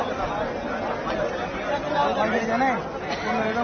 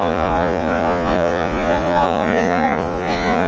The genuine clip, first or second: first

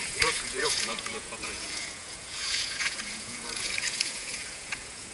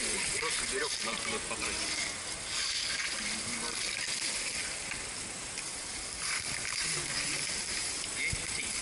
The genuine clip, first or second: second